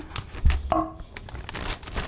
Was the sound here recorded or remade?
recorded